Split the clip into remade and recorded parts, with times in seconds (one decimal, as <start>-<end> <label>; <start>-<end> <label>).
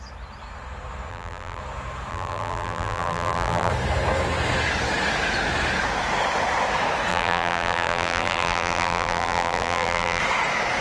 0.0-1.1 recorded; 1.1-1.6 remade; 1.6-2.1 recorded; 2.1-3.7 remade; 3.7-7.1 recorded; 7.1-10.2 remade; 10.2-10.8 recorded